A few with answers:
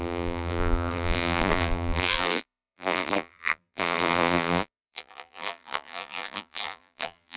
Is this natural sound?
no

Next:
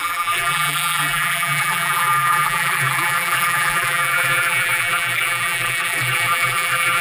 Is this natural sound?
no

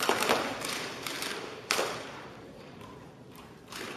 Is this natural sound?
no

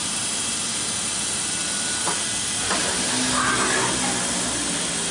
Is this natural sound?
yes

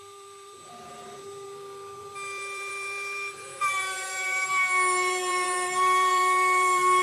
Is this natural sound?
no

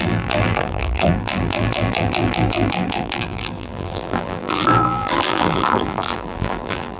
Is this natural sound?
no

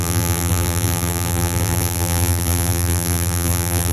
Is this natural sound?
no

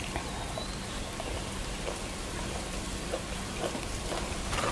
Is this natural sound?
no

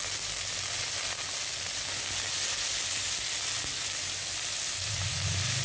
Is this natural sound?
yes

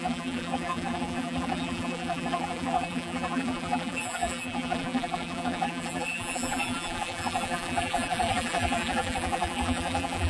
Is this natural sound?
no